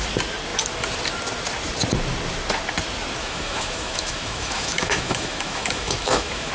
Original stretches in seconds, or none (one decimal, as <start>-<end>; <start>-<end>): 0.0-3.2